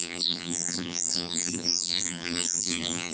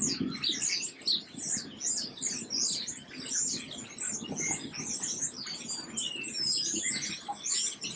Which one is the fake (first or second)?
first